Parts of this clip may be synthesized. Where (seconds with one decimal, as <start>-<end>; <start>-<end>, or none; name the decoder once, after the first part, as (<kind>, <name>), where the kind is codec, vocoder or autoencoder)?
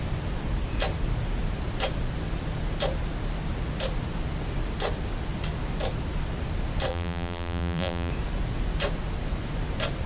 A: 6.9-8.1 (vocoder, BigVGAN v2)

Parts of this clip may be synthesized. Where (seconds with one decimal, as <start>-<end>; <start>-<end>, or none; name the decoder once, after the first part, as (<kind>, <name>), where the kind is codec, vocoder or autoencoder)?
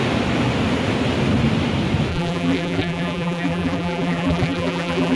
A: 2.1-5.2 (vocoder, BigVGAN v2)